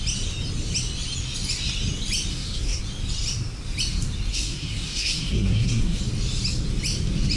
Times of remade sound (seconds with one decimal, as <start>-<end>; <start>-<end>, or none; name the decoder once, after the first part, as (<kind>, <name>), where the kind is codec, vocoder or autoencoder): 2.3-2.8 (codec, SNAC); 4.3-6.0